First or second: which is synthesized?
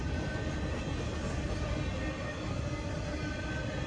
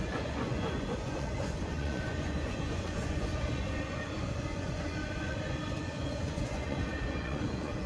second